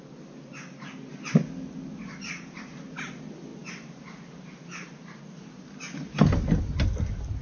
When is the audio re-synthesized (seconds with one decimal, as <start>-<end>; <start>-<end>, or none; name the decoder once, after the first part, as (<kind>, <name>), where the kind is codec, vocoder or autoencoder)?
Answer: none